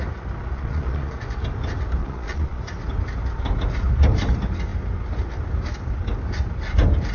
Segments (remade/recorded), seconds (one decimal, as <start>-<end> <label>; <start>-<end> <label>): 0.0-0.5 recorded; 0.5-1.1 remade; 1.1-2.0 recorded; 2.0-2.6 remade; 2.6-7.1 recorded